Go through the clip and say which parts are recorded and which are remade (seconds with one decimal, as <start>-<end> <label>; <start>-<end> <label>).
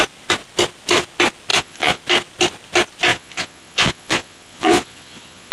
0.0-1.5 recorded; 1.5-2.0 remade; 2.0-3.1 recorded; 3.1-5.5 remade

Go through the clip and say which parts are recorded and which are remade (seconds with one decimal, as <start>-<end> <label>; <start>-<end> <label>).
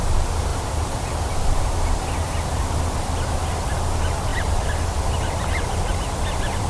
0.0-6.7 recorded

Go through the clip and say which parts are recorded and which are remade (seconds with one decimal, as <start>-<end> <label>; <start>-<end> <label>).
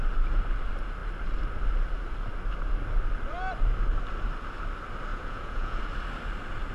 0.0-5.1 recorded; 5.1-5.8 remade; 5.8-6.7 recorded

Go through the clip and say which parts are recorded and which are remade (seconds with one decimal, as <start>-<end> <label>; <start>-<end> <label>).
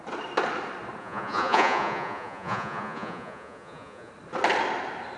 0.0-1.0 recorded; 1.0-4.1 remade; 4.1-5.2 recorded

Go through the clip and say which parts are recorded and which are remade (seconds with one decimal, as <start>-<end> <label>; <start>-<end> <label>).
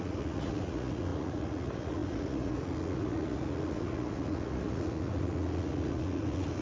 0.0-6.6 remade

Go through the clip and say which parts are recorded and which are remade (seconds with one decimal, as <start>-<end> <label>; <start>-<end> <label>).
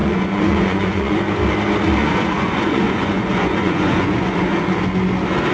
0.0-1.3 remade; 1.3-2.0 recorded; 2.0-4.8 remade; 4.8-5.5 recorded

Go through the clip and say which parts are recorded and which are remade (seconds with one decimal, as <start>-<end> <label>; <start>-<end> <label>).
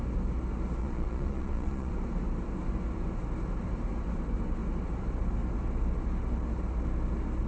0.0-0.8 recorded; 0.8-1.9 remade; 1.9-7.5 recorded